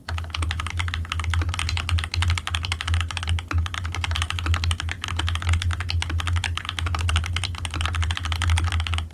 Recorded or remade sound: recorded